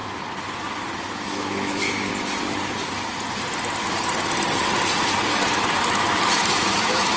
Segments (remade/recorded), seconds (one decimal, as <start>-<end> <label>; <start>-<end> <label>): 0.0-1.3 recorded; 1.3-2.1 remade; 2.1-5.8 recorded; 5.8-7.2 remade